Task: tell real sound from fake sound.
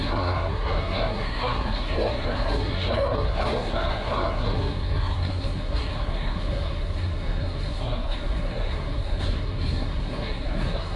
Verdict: fake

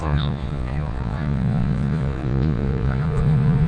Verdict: fake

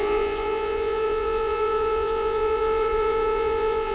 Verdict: fake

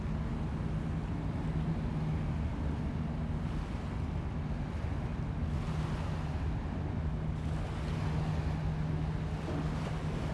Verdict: real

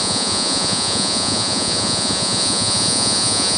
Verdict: fake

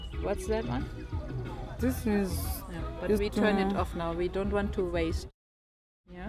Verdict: real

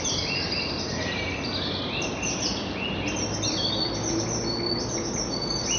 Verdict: real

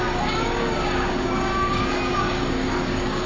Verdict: fake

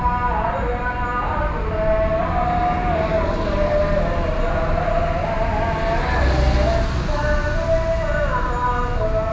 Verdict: real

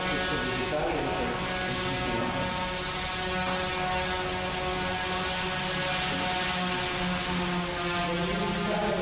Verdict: real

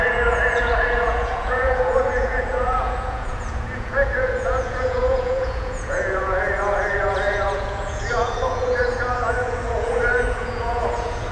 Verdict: fake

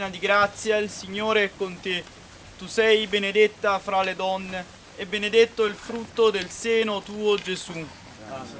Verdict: real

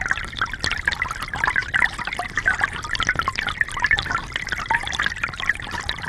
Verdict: real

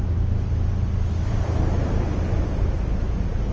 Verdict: real